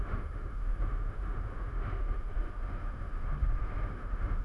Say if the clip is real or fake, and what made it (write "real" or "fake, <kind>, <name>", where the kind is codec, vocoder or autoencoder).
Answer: fake, autoencoder, DAC-VAE